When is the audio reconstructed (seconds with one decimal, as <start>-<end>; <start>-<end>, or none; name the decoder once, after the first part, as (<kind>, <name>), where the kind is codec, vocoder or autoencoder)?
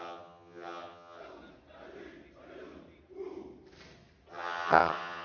0.0-1.2 (vocoder, HiFi-GAN); 4.3-5.2